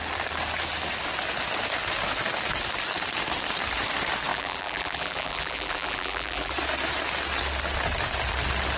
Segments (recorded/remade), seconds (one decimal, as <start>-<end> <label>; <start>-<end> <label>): 0.0-4.3 recorded; 4.3-6.5 remade; 6.5-8.8 recorded